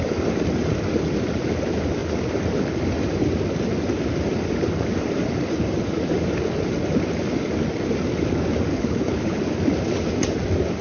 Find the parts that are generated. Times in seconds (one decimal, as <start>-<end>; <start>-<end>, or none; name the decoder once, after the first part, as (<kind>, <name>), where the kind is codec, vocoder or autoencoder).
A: 8.7-9.4 (codec, HILCodec)